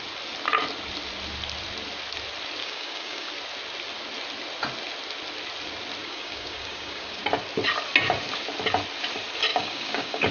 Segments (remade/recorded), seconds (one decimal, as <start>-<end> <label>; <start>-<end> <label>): 0.0-2.6 recorded; 2.6-3.3 remade; 3.3-6.0 recorded; 6.0-7.2 remade; 7.2-9.5 recorded; 9.5-10.3 remade